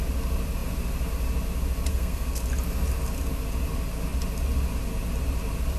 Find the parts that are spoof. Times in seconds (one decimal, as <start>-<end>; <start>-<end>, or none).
1.9-2.4